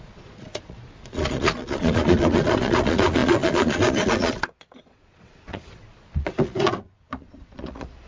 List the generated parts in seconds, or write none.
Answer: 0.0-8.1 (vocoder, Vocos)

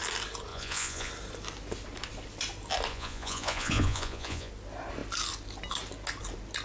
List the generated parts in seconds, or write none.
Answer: 0.5-1.1 (vocoder, Vocos); 2.9-4.5

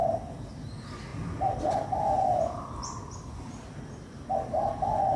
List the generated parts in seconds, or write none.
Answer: none

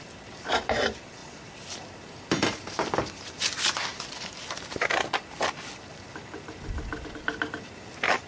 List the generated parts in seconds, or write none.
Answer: none